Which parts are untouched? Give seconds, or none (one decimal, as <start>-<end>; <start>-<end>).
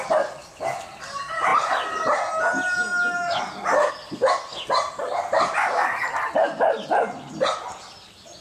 0.0-8.4